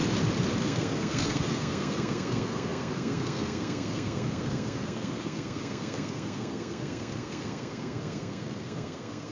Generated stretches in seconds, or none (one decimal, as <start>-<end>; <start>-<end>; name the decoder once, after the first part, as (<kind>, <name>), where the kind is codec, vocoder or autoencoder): 0.6-9.3 (codec, SNAC)